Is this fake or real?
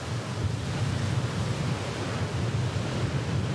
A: real